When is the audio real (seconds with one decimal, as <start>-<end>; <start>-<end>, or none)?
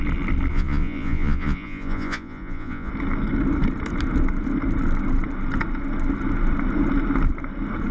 0.0-0.5; 2.9-7.9